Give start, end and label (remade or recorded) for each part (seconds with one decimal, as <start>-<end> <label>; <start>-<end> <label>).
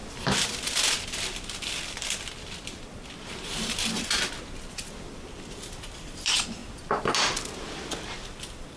0.0-8.8 recorded